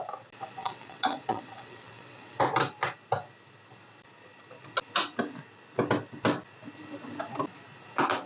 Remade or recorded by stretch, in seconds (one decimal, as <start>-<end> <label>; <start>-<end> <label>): 0.0-0.6 recorded; 0.6-2.4 remade; 2.4-8.3 recorded